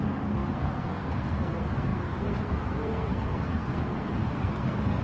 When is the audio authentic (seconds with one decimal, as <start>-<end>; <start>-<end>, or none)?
none